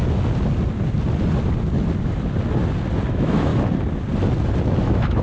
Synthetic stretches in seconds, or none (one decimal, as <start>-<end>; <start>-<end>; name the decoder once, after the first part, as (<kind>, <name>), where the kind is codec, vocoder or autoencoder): 3.1-3.5 (autoencoder, DAC-VAE); 4.8-5.2